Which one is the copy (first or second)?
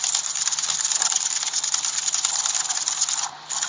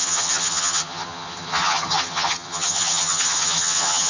second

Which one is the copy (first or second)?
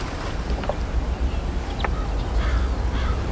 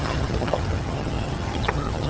second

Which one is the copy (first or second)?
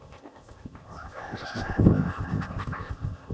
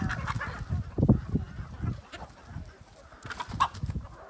first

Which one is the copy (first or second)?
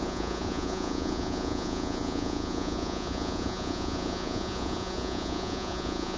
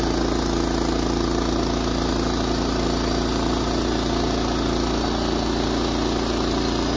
first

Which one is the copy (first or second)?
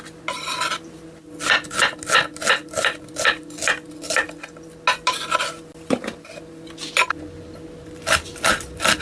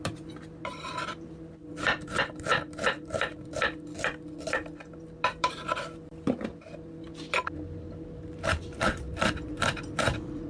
second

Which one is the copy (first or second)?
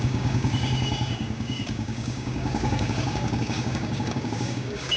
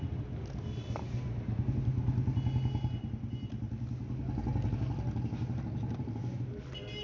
first